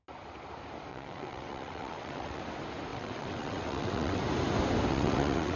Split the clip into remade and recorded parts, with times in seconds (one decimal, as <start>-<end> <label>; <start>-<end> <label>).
0.0-0.9 recorded; 0.9-2.4 remade; 2.4-2.9 recorded; 2.9-4.2 remade; 4.2-4.9 recorded; 4.9-5.6 remade